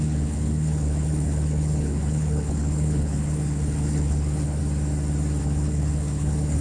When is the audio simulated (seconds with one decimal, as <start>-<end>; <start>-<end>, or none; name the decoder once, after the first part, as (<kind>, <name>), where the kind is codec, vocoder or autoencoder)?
0.0-4.6 (codec, HILCodec); 5.4-6.6